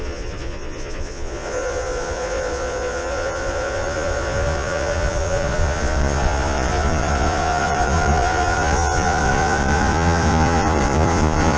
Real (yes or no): no